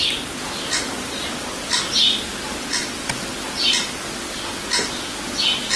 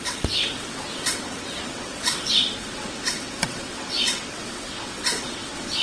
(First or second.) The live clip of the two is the first